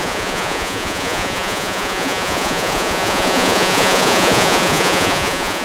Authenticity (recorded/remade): remade